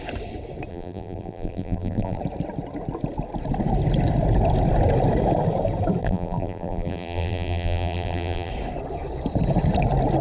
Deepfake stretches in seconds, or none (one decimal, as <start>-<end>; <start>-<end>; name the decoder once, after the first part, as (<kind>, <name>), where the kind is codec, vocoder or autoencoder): 0.7-2.2 (vocoder, BigVGAN v2); 6.0-8.5